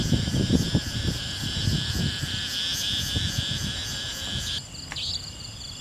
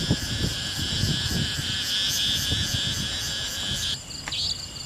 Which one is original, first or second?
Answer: second